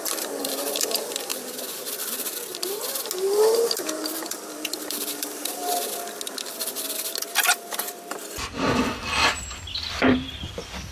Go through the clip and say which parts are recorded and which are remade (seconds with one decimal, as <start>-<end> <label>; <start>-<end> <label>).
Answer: 0.0-1.3 remade; 1.3-2.1 recorded; 2.1-2.5 remade; 2.5-3.8 recorded; 3.8-5.6 remade; 5.6-6.3 recorded; 6.3-9.2 remade; 9.2-9.9 recorded; 9.9-10.9 remade